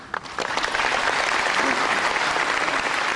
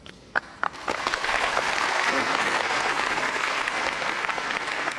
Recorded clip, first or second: first